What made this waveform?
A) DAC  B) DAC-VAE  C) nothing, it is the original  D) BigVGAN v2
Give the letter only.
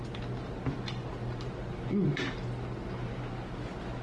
C